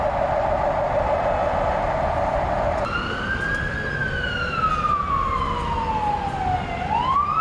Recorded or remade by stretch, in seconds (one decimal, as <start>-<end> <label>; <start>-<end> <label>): 0.0-7.4 recorded